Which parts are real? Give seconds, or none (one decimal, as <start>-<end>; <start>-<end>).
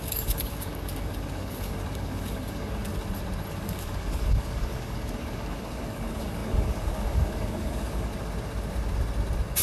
2.9-3.5; 8.1-9.6